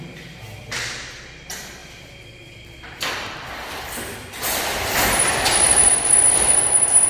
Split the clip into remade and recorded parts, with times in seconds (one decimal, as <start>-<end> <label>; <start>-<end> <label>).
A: 0.0-1.8 recorded; 1.8-6.1 remade; 6.1-7.1 recorded